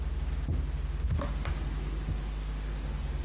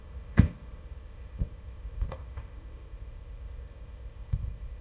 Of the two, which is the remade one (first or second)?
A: second